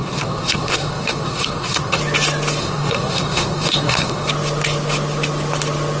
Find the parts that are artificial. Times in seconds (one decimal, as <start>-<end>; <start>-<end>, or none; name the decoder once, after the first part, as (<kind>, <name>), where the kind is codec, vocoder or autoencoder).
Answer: 0.0-2.0 (codec, SNAC); 2.6-4.3